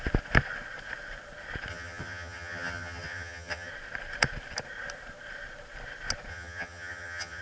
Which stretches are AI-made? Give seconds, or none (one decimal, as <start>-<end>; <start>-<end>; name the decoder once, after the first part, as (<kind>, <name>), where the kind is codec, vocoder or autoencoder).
1.7-3.7 (vocoder, HiFi-GAN); 6.3-7.4